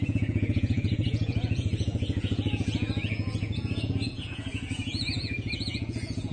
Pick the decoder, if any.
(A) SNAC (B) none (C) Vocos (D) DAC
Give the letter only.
C